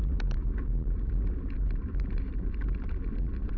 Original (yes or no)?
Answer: no